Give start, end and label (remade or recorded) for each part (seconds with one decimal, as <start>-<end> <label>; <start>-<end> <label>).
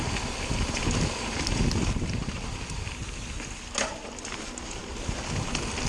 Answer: 0.0-5.9 recorded